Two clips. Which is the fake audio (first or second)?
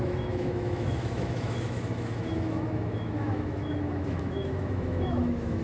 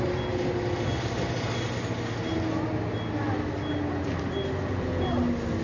first